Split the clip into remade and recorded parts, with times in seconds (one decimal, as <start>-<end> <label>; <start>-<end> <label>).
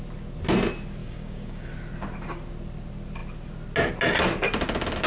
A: 0.0-1.0 recorded; 1.0-1.7 remade; 1.7-5.1 recorded